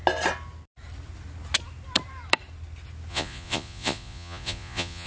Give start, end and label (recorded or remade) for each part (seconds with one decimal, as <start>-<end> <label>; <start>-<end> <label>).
0.0-3.1 recorded; 3.1-5.1 remade